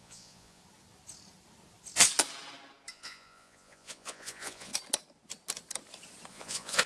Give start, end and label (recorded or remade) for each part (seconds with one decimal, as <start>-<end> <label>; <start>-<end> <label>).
0.0-0.6 remade; 0.6-2.9 recorded; 2.9-4.7 remade; 4.7-6.3 recorded; 6.3-6.9 remade